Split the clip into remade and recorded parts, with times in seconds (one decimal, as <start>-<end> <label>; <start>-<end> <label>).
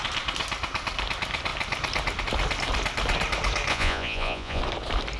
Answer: 0.0-3.7 recorded; 3.7-4.6 remade; 4.6-5.2 recorded